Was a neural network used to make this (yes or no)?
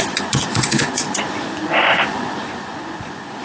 yes